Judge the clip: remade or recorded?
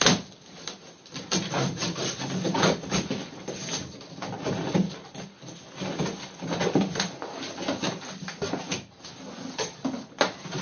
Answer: recorded